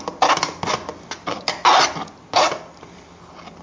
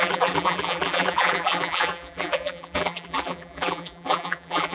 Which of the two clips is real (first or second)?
first